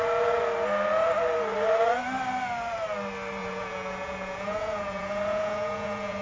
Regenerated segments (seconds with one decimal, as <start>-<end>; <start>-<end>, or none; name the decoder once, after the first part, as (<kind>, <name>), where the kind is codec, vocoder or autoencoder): 3.4-6.2 (vocoder, Vocos)